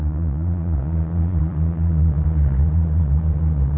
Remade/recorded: remade